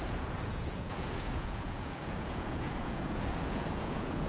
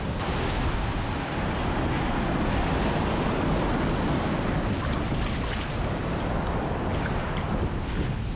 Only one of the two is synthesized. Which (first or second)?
first